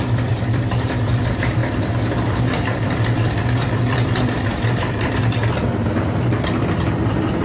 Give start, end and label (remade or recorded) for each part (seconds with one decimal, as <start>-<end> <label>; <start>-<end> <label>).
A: 0.0-7.4 remade